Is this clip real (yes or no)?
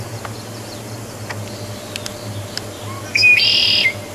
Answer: yes